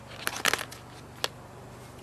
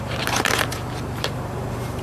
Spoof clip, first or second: second